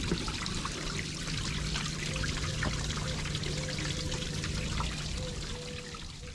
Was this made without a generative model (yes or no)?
yes